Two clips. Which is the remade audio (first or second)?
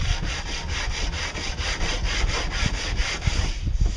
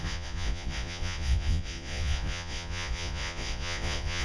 second